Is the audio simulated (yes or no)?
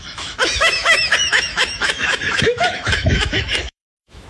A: yes